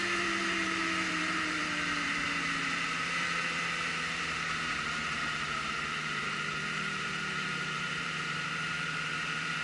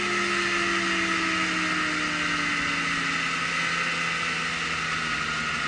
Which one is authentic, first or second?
second